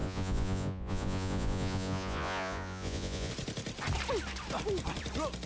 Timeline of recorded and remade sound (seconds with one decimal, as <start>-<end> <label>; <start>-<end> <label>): 0.0-3.3 remade; 3.3-5.5 recorded